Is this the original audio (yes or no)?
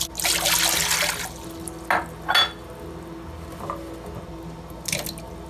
yes